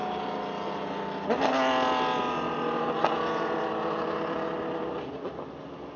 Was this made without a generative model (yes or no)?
yes